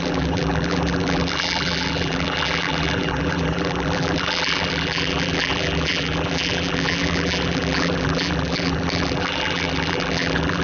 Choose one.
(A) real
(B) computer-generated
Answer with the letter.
B